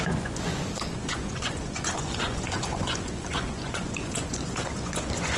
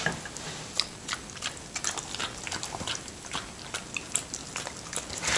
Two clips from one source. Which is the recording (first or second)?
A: second